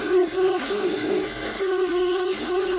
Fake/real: fake